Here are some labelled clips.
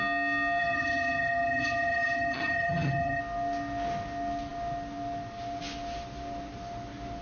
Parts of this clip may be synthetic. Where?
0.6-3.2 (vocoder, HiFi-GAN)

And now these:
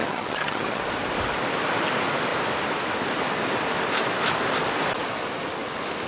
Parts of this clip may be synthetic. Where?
0.0-0.8 (vocoder, HiFi-GAN)

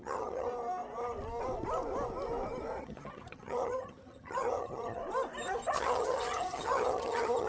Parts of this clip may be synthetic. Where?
0.0-0.5 (vocoder, HiFi-GAN); 2.8-5.0; 5.7-7.5

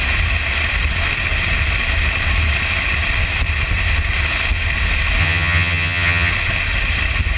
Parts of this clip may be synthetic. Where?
5.2-6.3 (vocoder, HiFi-GAN)